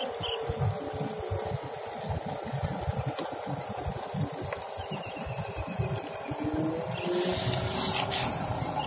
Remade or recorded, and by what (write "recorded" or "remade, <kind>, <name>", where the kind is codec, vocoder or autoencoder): recorded